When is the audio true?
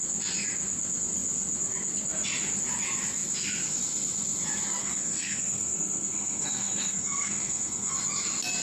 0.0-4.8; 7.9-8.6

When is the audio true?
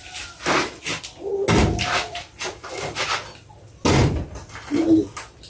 0.0-5.5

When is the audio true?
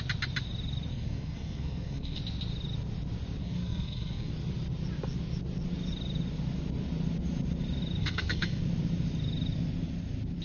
0.0-0.9; 2.2-3.4; 4.3-8.0; 8.6-10.4